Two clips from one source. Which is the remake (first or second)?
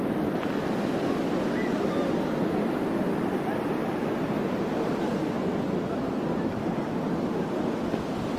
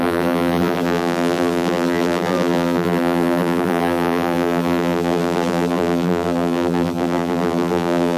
second